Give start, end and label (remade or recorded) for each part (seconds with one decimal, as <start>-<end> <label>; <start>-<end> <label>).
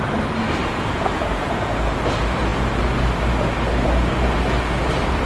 0.0-0.6 recorded; 0.6-1.8 remade; 1.8-5.3 recorded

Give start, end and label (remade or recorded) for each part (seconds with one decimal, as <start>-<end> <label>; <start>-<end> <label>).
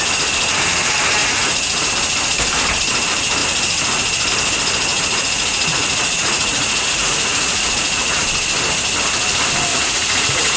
0.0-1.2 recorded; 1.2-1.9 remade; 1.9-4.9 recorded; 4.9-8.2 remade; 8.2-9.7 recorded; 9.7-10.6 remade